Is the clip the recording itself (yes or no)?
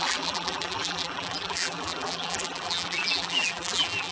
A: no